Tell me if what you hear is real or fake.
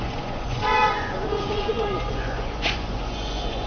fake